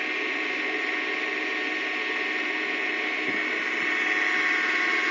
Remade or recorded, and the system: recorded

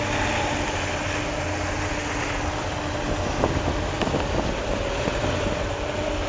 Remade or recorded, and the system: recorded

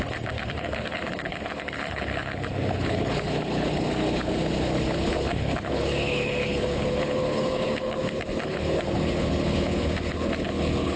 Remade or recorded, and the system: remade, codec, HILCodec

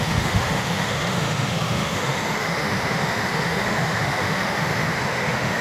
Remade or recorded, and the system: remade, autoencoder, DAC-VAE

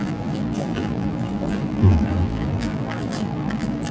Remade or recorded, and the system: remade, vocoder, BigVGAN v2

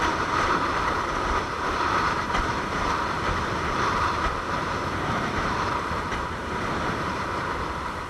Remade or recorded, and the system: remade, vocoder, BigVGAN v2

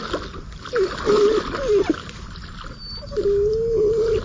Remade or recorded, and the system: recorded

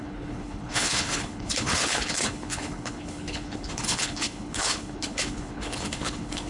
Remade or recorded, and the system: remade, codec, HILCodec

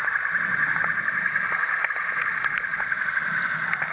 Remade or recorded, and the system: recorded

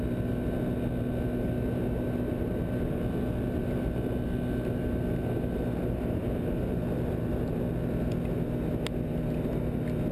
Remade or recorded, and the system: recorded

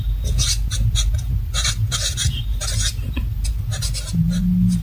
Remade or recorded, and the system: recorded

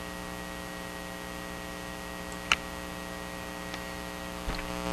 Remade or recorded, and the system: recorded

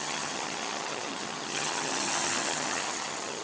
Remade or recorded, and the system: remade, vocoder, HiFi-GAN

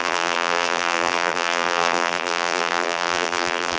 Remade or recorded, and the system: remade, vocoder, BigVGAN v2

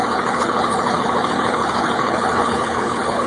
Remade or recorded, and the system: remade, codec, HILCodec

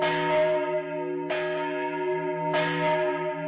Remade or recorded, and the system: recorded